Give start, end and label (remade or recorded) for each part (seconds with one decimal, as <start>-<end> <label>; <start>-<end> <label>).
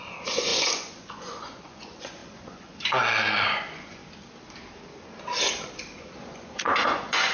0.0-4.0 remade; 4.0-6.0 recorded; 6.0-7.3 remade